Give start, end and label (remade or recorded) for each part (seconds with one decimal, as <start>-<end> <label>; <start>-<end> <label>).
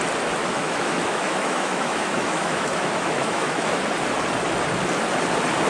0.0-0.4 recorded; 0.4-3.8 remade; 3.8-5.7 recorded